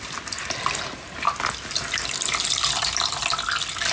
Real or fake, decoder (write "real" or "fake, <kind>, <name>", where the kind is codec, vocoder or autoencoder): real